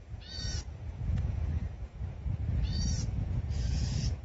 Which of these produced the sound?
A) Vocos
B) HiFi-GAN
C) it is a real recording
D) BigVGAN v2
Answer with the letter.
A